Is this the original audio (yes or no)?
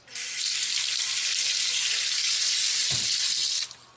yes